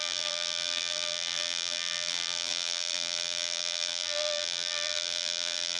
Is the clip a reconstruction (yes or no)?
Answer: yes